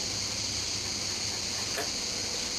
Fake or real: real